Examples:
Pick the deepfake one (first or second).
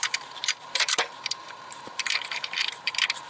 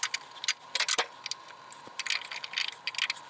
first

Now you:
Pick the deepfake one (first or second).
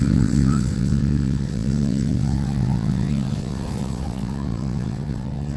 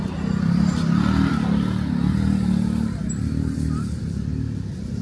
first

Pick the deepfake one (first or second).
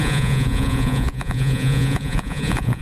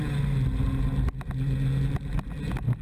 first